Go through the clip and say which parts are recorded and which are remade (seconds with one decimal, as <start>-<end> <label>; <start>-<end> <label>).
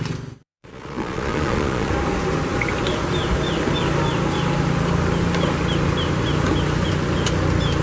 0.0-0.4 recorded; 0.4-1.9 remade; 1.9-7.8 recorded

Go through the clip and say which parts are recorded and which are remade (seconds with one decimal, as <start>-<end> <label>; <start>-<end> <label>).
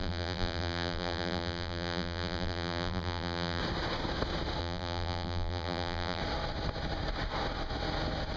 0.0-3.6 remade; 3.6-4.6 recorded; 4.6-6.2 remade; 6.2-8.4 recorded